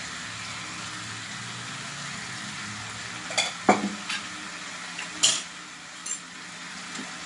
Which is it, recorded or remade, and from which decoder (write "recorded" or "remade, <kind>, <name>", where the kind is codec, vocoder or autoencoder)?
recorded